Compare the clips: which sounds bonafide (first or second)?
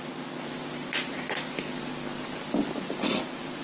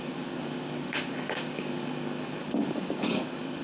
first